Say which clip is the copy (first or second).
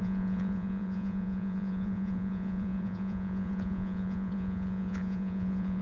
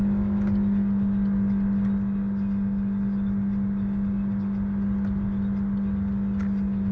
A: first